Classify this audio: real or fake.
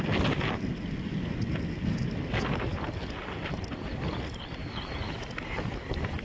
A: real